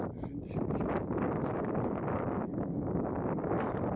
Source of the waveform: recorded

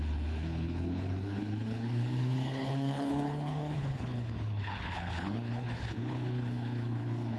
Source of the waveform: remade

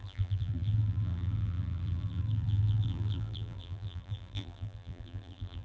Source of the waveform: remade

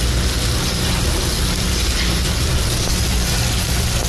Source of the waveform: recorded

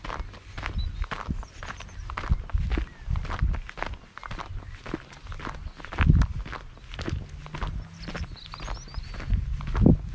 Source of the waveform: recorded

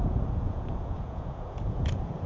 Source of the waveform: remade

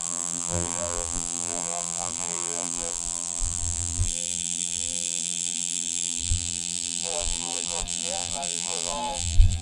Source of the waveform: remade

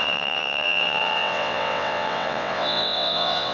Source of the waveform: remade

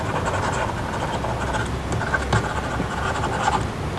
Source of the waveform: recorded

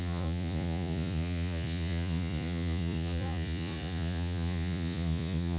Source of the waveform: remade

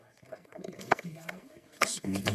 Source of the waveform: remade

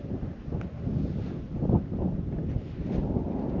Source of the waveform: recorded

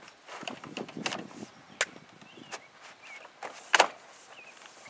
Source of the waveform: recorded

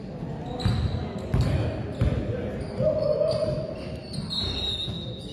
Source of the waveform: recorded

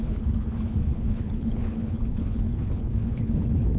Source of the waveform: remade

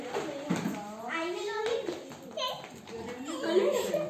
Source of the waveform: recorded